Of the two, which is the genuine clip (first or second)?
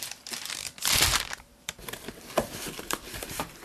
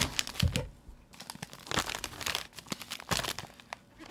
second